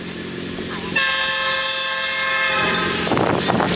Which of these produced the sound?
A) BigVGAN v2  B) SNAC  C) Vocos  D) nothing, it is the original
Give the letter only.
D